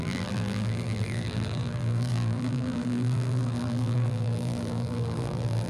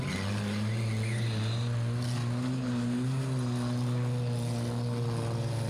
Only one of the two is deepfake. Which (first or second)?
first